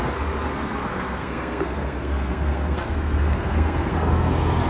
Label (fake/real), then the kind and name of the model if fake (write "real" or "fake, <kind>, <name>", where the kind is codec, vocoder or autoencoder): fake, codec, SNAC